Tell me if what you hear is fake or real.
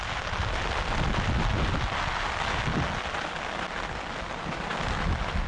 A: real